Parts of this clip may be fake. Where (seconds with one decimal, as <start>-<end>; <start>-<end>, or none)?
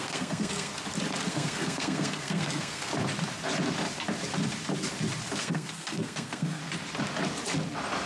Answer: 0.0-0.7; 1.3-2.9; 5.4-6.6